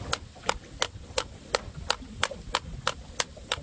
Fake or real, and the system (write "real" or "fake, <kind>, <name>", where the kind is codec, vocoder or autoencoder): real